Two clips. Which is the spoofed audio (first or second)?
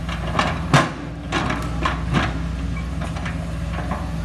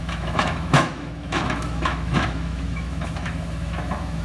second